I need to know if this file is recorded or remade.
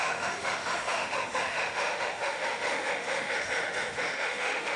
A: remade